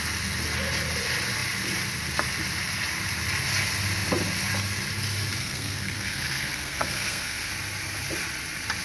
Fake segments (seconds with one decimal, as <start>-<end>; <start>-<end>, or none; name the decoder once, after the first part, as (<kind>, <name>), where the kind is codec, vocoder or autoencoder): 5.4-7.5 (codec, SNAC)